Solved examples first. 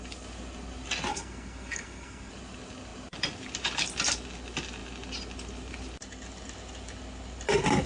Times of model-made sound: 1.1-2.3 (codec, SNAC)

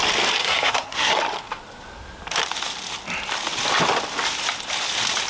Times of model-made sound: 0.4-1.1 (codec, SNAC)

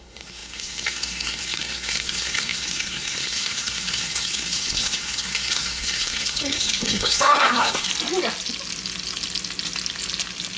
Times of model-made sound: 0.0-7.9 (codec, SNAC)

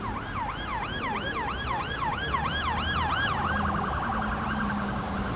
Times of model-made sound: none

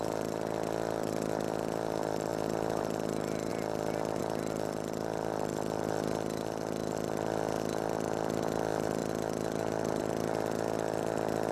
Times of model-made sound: none

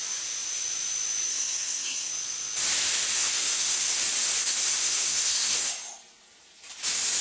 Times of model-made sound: 1.3-2.1 (codec, SNAC); 3.2-4.0; 4.4-5.7